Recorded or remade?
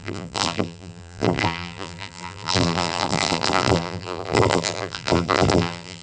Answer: remade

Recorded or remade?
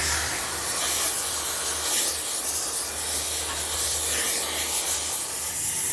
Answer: recorded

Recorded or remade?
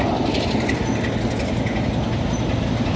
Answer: recorded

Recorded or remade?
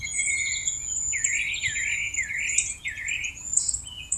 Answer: remade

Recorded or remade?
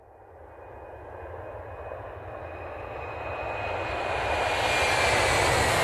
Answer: recorded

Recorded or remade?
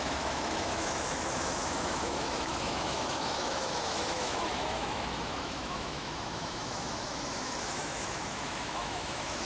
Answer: remade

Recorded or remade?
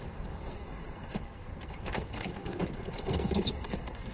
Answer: remade